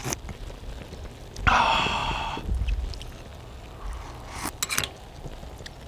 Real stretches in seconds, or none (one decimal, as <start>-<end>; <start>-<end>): 0.0-5.9